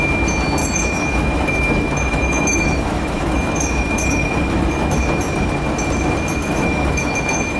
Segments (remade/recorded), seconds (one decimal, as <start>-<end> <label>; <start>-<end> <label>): 0.0-0.6 recorded; 0.6-5.2 remade; 5.2-6.4 recorded; 6.4-7.6 remade